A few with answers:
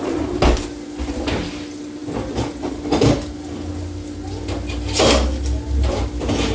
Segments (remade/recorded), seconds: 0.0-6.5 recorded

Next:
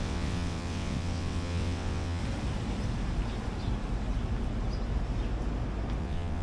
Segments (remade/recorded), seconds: 0.0-2.2 remade; 2.2-6.0 recorded; 6.0-6.4 remade

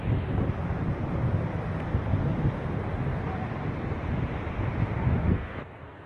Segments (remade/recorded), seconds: 0.0-5.2 recorded; 5.2-6.1 remade

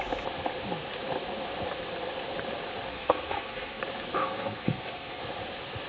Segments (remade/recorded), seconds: 0.0-2.9 recorded; 2.9-3.8 remade; 3.8-4.2 recorded; 4.2-5.2 remade; 5.2-5.9 recorded